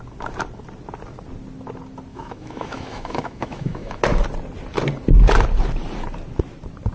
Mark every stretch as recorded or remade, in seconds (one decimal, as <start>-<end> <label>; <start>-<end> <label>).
0.0-2.1 recorded; 2.1-4.0 remade; 4.0-6.9 recorded